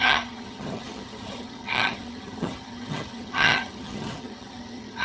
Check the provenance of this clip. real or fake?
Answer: fake